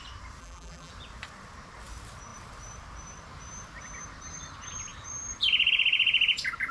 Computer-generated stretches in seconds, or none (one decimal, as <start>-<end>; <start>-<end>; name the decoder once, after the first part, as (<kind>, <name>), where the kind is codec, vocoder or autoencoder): 0.4-0.9 (vocoder, BigVGAN v2)